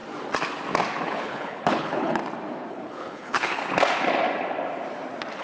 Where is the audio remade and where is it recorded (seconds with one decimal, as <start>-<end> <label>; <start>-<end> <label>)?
0.0-1.0 recorded; 1.0-2.2 remade; 2.2-2.7 recorded; 2.7-3.6 remade; 3.6-5.4 recorded